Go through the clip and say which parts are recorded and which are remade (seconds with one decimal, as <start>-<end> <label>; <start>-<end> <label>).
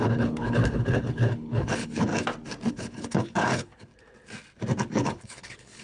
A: 0.0-2.1 remade; 2.1-2.7 recorded; 2.7-3.9 remade; 3.9-4.9 recorded; 4.9-5.8 remade